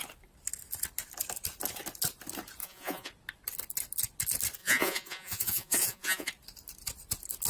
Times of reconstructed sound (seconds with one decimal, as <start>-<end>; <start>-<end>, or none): 2.6-3.1; 4.6-6.3